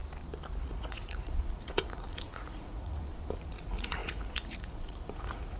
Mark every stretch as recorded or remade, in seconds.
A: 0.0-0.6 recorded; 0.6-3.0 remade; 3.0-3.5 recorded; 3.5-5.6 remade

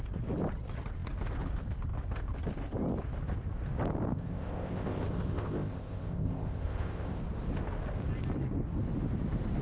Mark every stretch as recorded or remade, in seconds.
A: 0.0-4.1 recorded; 4.1-7.2 remade; 7.2-9.6 recorded

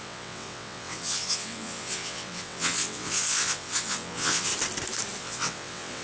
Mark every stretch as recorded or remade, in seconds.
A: 0.0-4.5 remade; 4.5-5.2 recorded; 5.2-6.0 remade

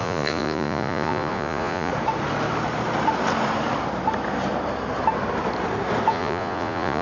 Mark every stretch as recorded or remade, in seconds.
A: 0.0-1.9 remade; 1.9-6.1 recorded; 6.1-7.0 remade

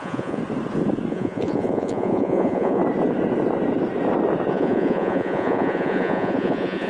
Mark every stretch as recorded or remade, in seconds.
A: 0.0-0.4 remade; 0.4-1.1 recorded; 1.1-2.8 remade; 2.8-4.5 recorded; 4.5-6.9 remade